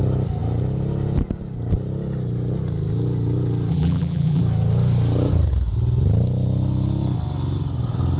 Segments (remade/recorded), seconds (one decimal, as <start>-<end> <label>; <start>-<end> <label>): 0.0-3.7 recorded; 3.7-4.4 remade; 4.4-8.2 recorded